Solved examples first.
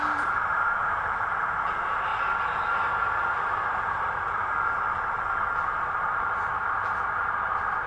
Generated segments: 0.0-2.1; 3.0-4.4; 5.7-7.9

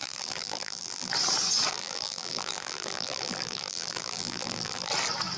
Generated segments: 0.0-1.1; 1.7-4.9

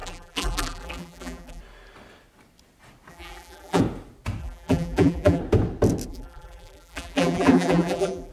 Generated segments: 0.0-1.6; 3.1-3.8; 4.4-5.4; 6.1-8.3

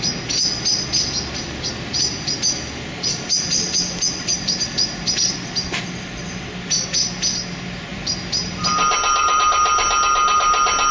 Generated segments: 4.3-6.2; 7.9-9.4

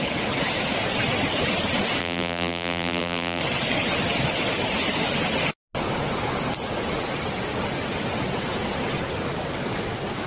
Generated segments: 2.0-3.4

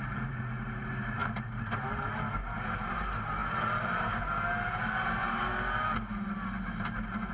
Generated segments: 0.0-5.5